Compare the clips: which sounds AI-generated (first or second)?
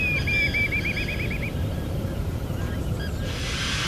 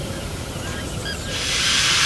second